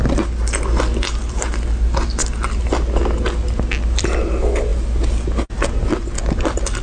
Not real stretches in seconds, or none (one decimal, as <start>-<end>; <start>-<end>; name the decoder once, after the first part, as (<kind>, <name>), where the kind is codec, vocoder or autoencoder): none